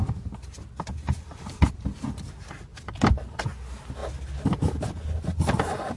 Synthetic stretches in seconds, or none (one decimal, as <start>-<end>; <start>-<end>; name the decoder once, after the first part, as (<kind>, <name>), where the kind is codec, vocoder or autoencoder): none